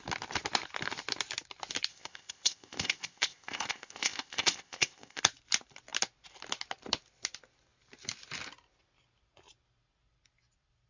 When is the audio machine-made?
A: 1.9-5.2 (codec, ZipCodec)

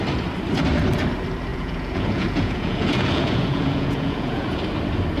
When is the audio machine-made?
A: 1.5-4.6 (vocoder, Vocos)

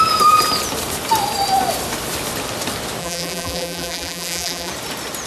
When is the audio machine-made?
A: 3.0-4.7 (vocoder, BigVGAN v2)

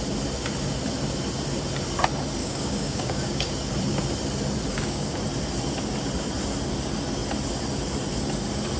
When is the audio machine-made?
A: 2.4-3.5 (codec, DAC); 4.7-5.2